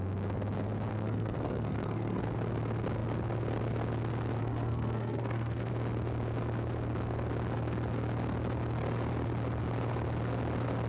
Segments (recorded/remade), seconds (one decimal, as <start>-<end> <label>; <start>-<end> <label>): 0.0-0.9 recorded; 0.9-2.2 remade; 2.2-4.4 recorded; 4.4-5.7 remade; 5.7-10.9 recorded